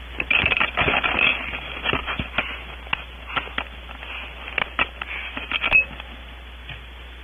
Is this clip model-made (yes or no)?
no